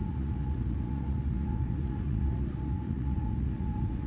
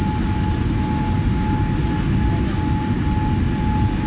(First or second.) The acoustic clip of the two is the second